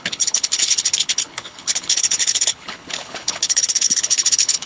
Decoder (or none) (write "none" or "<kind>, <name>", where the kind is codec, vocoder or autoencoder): codec, HILCodec